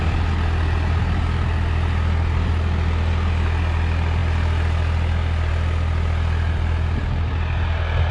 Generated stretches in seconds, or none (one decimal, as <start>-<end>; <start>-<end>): none